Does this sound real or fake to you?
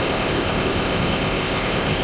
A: fake